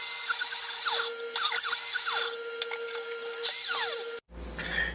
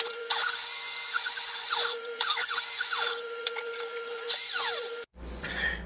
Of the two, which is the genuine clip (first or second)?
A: first